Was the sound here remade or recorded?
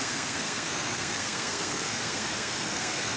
remade